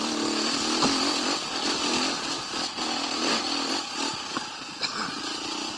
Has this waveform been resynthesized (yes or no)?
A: no